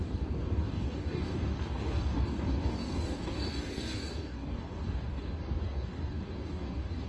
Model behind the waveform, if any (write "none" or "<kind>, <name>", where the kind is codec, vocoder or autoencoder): codec, DAC